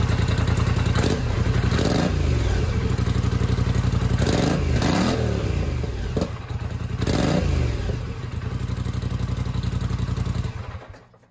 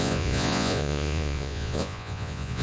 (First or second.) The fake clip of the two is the second